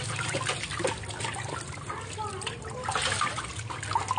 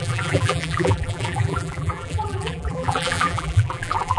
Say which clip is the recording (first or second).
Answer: first